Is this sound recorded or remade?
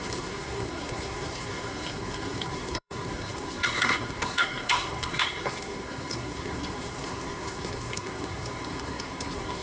remade